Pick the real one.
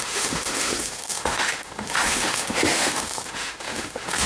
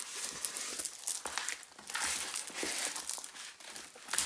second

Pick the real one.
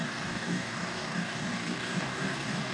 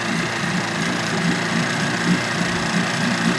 second